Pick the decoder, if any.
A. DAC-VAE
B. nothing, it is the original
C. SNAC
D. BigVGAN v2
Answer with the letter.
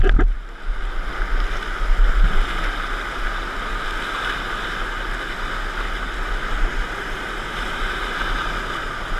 B